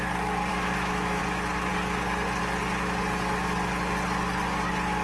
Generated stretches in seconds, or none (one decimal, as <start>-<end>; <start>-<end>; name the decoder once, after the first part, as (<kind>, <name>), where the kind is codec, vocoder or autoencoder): 0.5-1.2 (autoencoder, DAC-VAE)